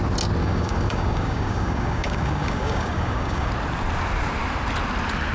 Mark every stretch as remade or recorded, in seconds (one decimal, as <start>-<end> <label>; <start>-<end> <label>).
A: 0.0-0.4 recorded; 0.4-3.5 remade; 3.5-5.3 recorded